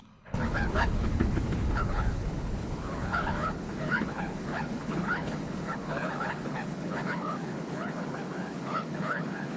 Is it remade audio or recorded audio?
remade